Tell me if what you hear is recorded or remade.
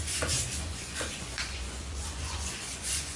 remade